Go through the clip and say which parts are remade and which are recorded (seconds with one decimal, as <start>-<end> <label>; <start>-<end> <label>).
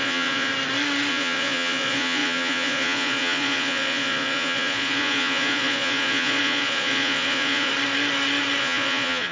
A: 0.0-0.5 remade; 0.5-1.1 recorded; 1.1-7.7 remade; 7.7-8.6 recorded; 8.6-9.3 remade